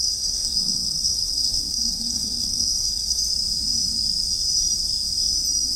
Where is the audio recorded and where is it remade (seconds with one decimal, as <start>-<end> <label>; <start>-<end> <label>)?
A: 0.0-3.2 remade; 3.2-5.8 recorded